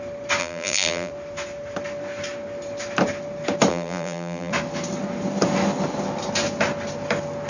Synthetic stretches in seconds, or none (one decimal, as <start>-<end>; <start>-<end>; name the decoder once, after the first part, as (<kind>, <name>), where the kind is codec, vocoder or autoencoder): 0.4-1.1 (vocoder, BigVGAN v2); 3.7-4.5